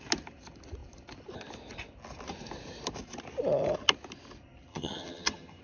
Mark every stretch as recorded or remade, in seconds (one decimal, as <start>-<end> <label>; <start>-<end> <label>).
0.0-4.7 recorded; 4.7-5.6 remade